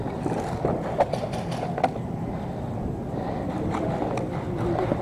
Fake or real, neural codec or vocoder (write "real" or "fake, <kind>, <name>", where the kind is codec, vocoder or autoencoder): real